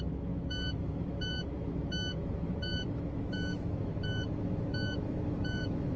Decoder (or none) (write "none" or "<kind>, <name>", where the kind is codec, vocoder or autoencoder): autoencoder, DAC-VAE